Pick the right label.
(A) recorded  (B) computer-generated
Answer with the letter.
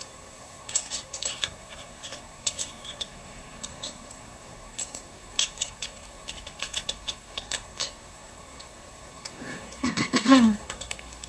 B